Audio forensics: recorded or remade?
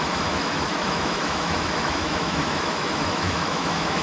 remade